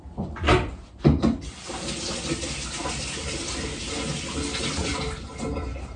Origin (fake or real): real